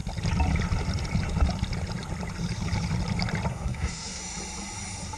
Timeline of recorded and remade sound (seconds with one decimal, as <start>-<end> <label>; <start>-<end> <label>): 0.0-3.5 recorded; 3.5-4.2 remade; 4.2-5.2 recorded